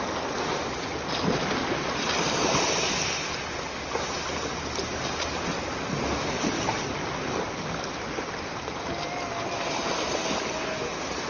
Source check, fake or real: real